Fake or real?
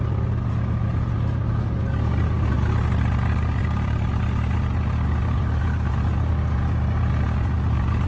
real